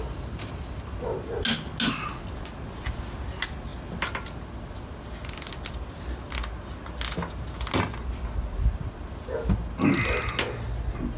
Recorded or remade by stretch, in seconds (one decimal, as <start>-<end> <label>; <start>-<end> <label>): 0.0-11.2 recorded